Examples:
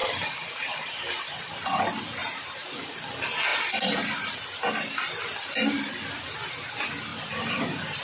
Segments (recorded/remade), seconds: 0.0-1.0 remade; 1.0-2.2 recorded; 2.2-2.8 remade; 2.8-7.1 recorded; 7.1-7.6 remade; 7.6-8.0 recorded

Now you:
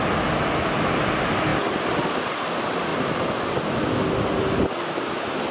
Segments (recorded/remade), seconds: 0.0-1.5 recorded; 1.5-2.5 remade; 2.5-5.5 recorded

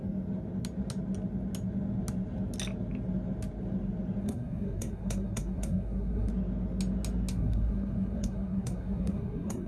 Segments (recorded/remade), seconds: 0.0-4.2 recorded; 4.2-6.3 remade; 6.3-7.3 recorded; 7.3-9.7 remade

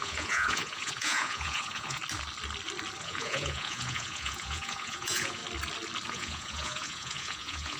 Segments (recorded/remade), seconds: 0.0-2.0 remade; 2.0-3.0 recorded; 3.0-5.4 remade; 5.4-6.1 recorded; 6.1-7.8 remade